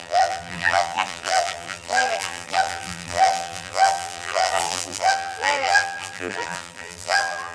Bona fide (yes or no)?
no